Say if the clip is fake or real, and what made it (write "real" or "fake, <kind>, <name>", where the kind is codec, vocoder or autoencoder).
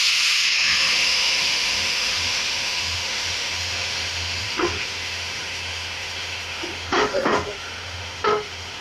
fake, autoencoder, DAC-VAE